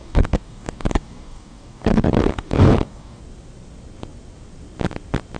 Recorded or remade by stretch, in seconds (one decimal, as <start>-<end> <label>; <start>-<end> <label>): 0.0-3.2 remade; 3.2-5.4 recorded